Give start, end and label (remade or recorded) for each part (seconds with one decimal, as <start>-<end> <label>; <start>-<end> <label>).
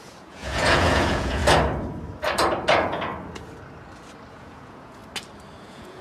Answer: 0.0-1.4 remade; 1.4-2.7 recorded; 2.7-3.1 remade; 3.1-4.3 recorded; 4.3-5.0 remade; 5.0-5.6 recorded; 5.6-6.0 remade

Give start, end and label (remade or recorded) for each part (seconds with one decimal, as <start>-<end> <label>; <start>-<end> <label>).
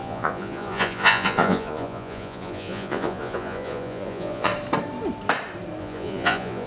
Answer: 0.0-4.5 remade; 4.5-5.8 recorded; 5.8-6.7 remade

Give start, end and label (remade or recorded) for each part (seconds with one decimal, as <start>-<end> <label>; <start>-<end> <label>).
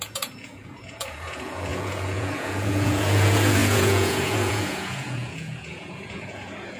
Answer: 0.0-6.8 remade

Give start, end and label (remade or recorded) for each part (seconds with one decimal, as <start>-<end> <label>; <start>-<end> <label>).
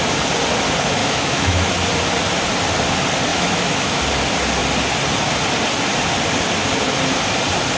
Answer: 0.0-1.0 recorded; 1.0-1.7 remade; 1.7-3.3 recorded; 3.3-4.0 remade; 4.0-7.8 recorded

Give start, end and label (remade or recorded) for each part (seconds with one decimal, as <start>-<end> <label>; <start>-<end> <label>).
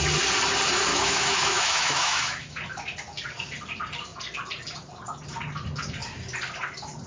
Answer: 0.0-0.9 recorded; 0.9-2.6 remade; 2.6-7.1 recorded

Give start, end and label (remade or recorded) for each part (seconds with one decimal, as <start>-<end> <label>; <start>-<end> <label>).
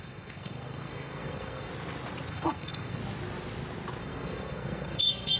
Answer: 0.0-1.7 remade; 1.7-2.3 recorded; 2.3-3.0 remade; 3.0-4.0 recorded; 4.0-5.4 remade